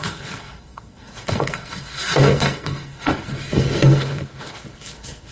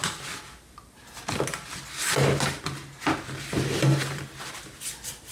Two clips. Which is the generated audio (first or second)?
first